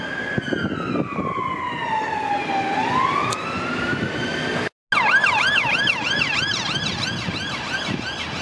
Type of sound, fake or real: real